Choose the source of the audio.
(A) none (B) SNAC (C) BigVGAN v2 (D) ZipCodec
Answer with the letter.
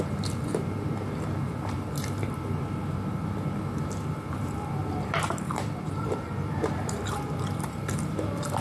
C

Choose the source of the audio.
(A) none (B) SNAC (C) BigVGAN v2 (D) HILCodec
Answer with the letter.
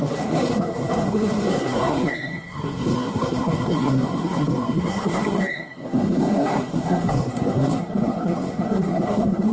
B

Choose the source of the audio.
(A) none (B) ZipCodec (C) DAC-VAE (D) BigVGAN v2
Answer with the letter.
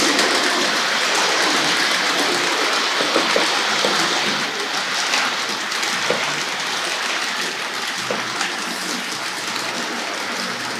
A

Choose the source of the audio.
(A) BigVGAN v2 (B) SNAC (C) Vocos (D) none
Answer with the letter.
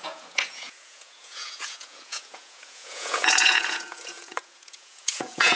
C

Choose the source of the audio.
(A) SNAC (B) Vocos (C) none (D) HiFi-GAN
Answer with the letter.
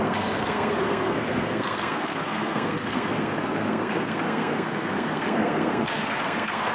A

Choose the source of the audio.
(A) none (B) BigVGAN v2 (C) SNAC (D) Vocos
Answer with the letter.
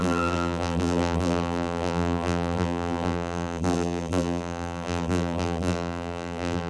B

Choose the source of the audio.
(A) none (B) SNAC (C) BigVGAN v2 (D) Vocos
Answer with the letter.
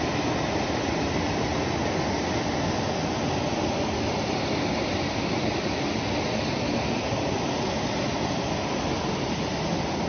A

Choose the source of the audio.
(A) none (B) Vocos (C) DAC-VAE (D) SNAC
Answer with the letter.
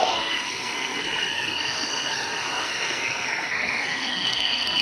D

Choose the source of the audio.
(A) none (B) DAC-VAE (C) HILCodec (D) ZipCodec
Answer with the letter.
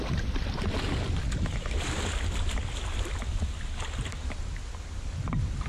A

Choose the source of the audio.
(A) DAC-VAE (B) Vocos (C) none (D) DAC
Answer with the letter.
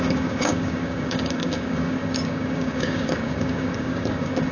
D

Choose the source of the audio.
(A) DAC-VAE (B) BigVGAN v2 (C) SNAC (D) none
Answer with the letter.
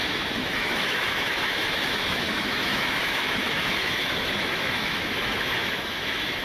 A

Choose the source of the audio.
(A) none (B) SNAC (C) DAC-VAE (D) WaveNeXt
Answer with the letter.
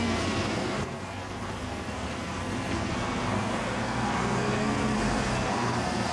B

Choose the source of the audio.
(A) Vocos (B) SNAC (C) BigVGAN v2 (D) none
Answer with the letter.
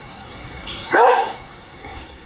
B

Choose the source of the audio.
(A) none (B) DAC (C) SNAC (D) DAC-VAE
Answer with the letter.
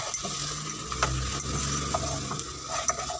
A